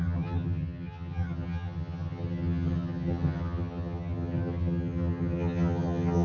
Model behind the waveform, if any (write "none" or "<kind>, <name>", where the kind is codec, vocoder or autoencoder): vocoder, HiFi-GAN